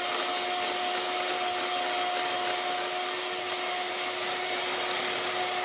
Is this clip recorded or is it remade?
recorded